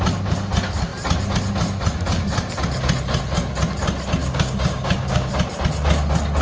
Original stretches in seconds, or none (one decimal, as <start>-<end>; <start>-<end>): 0.0-4.2; 5.3-6.4